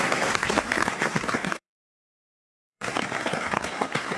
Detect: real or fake fake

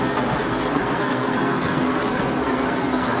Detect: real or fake fake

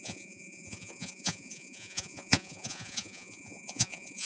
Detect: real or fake fake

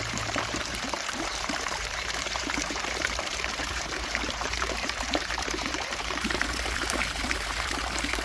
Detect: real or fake fake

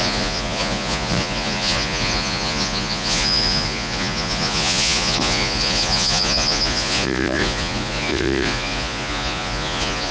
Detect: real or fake fake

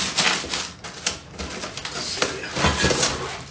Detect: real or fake real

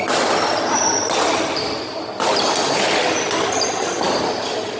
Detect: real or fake real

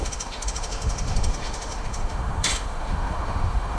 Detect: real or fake fake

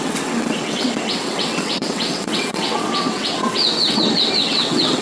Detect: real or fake fake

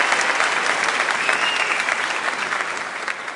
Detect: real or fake real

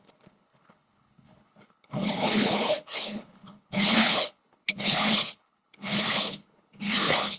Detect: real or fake fake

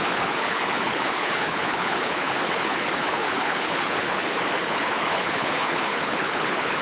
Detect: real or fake fake